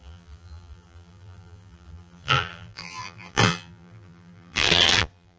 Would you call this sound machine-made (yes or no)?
yes